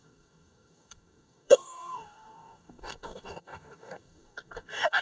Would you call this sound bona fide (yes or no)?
no